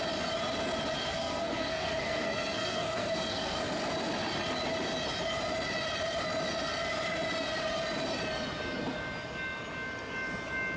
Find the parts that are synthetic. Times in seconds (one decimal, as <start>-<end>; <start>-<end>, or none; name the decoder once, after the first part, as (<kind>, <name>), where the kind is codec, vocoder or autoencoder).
1.1-3.6 (codec, SNAC)

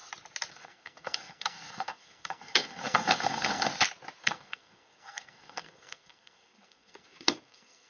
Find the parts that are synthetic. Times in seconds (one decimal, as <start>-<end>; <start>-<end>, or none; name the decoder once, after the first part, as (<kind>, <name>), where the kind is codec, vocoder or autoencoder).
0.5-3.7 (codec, SNAC); 4.2-7.9